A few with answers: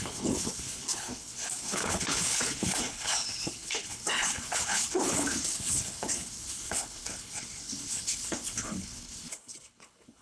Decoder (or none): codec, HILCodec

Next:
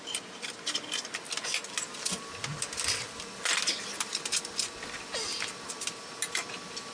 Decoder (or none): none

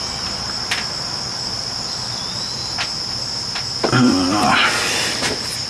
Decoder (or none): none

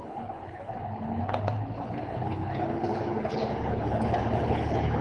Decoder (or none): codec, HILCodec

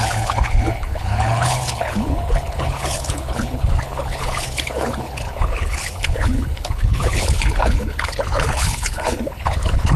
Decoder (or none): codec, HILCodec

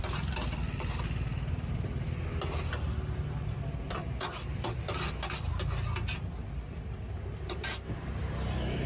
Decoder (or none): none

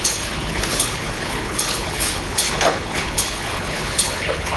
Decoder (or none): codec, HILCodec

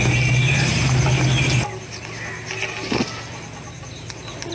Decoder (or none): none